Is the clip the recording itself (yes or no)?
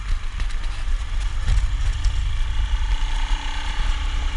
yes